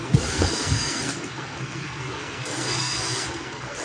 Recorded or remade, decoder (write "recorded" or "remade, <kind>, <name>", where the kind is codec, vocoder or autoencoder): remade, codec, SNAC